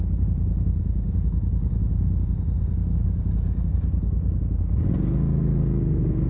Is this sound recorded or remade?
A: remade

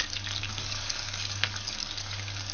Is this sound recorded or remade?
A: remade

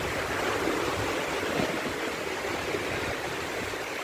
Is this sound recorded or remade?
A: recorded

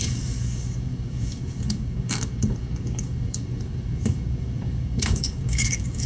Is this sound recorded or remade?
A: remade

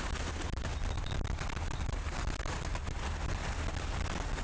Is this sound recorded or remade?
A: recorded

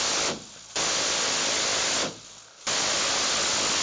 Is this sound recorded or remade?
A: recorded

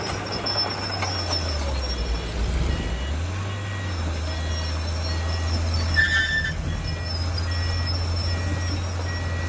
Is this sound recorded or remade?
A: recorded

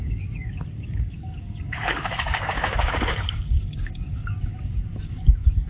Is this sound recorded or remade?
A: remade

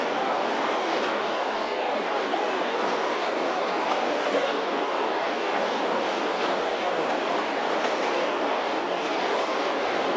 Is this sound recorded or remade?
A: remade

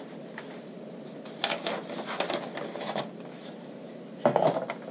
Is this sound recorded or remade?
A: recorded